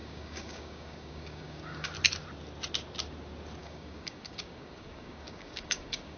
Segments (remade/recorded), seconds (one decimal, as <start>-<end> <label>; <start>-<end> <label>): 0.0-1.9 remade; 1.9-3.6 recorded; 3.6-6.2 remade